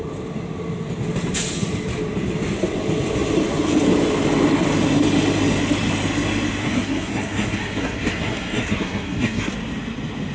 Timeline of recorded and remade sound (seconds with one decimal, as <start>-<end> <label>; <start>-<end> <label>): 0.0-6.6 recorded; 6.6-9.5 remade; 9.5-10.3 recorded